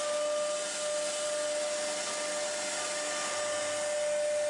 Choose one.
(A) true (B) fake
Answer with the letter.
A